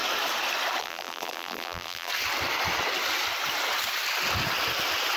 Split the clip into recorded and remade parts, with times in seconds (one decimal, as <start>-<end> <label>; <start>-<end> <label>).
0.0-0.8 recorded; 0.8-2.1 remade; 2.1-5.2 recorded